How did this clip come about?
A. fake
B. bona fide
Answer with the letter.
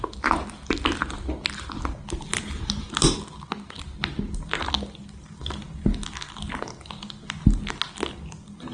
B